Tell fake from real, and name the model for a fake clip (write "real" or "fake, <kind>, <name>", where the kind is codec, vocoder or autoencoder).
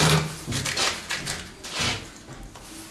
real